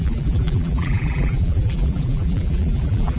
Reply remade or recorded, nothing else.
remade